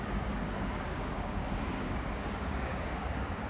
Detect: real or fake fake